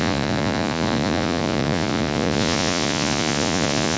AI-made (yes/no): yes